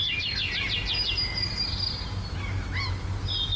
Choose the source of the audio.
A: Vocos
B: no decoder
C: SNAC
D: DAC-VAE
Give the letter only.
B